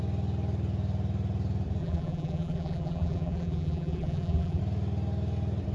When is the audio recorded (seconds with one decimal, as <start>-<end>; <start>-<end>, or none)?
0.0-1.8; 4.6-5.7